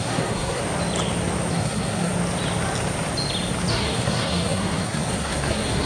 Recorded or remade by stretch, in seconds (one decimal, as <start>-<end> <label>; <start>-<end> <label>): 0.0-0.6 remade; 0.6-1.5 recorded; 1.5-2.1 remade; 2.1-3.7 recorded; 3.7-5.9 remade